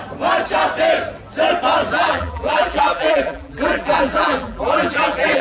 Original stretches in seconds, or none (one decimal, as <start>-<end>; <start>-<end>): 0.0-1.9